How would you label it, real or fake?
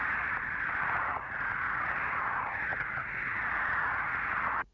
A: fake